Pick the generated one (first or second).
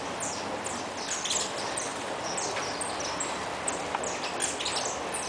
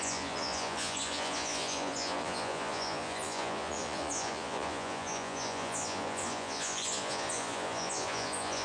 second